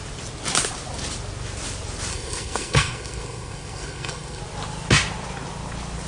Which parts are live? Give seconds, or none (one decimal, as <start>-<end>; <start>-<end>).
0.0-2.1; 4.4-6.1